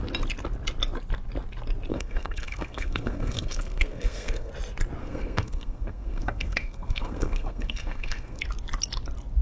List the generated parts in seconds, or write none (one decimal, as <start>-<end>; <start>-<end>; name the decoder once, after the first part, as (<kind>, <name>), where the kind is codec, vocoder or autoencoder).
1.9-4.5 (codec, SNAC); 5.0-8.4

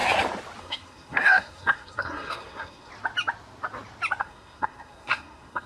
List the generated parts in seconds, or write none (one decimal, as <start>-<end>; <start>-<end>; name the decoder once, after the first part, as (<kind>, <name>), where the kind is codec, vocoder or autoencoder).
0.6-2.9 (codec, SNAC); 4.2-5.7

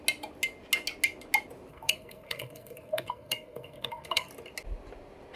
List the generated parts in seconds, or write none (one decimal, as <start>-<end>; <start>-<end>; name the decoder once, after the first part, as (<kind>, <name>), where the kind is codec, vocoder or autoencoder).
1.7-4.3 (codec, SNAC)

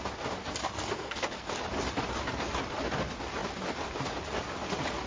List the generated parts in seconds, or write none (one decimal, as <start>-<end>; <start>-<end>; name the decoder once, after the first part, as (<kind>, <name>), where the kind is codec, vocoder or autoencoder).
0.6-1.5 (codec, SNAC)